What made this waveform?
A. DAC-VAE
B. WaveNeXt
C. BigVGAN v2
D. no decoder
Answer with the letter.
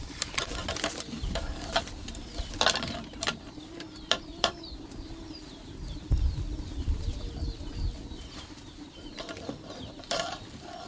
C